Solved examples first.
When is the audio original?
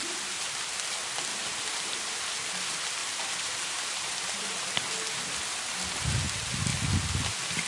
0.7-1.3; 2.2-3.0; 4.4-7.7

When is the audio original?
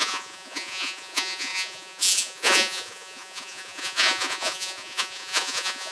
none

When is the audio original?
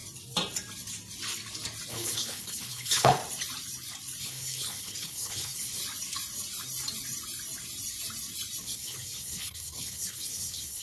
0.0-1.9; 3.2-4.2; 5.8-8.6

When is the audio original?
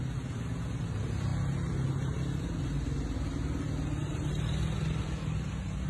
0.0-5.9